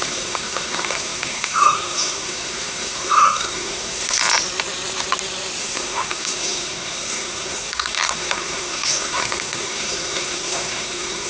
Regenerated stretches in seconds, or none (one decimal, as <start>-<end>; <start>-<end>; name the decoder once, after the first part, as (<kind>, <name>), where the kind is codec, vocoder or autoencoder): 0.0-4.2 (codec, SNAC); 5.6-11.3